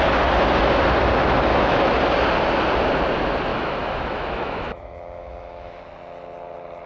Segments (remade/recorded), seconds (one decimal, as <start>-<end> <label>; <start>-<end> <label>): 0.0-1.5 recorded; 1.5-2.0 remade; 2.0-3.5 recorded; 3.5-5.8 remade; 5.8-6.9 recorded